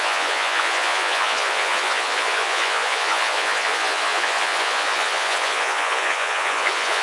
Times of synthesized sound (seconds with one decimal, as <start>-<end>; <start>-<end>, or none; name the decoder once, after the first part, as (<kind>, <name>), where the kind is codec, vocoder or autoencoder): 0.0-7.0 (vocoder, Vocos)